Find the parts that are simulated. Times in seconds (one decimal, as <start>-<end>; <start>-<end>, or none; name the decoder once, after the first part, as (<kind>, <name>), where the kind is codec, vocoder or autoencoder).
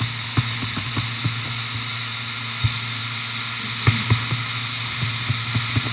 none